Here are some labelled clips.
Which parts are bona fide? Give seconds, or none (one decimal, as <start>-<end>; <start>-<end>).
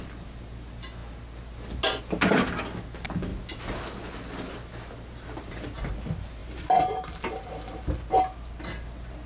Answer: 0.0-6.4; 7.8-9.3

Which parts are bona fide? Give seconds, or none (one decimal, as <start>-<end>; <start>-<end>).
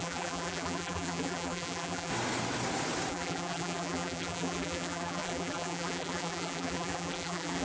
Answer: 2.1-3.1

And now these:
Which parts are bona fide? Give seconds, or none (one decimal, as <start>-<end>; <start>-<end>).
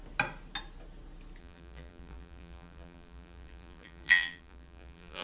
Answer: 0.0-1.4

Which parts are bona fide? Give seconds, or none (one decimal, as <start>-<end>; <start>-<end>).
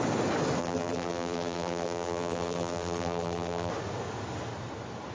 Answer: 0.0-0.6; 3.7-5.1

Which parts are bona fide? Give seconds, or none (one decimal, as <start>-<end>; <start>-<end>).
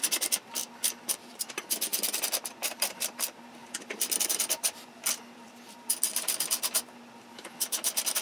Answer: 0.6-1.1; 1.9-2.6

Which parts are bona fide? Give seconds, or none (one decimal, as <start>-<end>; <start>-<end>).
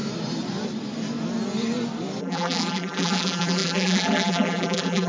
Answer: 0.0-2.2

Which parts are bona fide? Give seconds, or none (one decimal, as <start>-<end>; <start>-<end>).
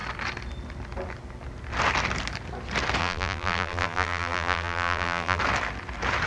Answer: 0.0-3.0; 5.4-6.3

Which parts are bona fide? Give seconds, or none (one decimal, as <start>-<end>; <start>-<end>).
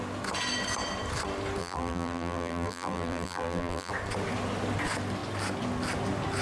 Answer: 0.0-1.6; 3.9-6.4